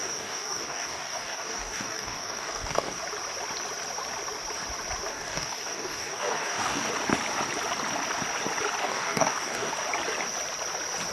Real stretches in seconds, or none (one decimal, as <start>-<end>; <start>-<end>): 3.0-5.1; 6.9-8.8; 9.7-11.1

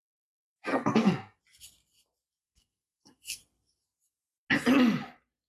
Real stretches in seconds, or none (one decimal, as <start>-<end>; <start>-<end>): 0.0-0.7; 1.4-2.4; 3.4-5.5